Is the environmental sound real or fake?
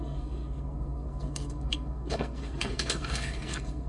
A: fake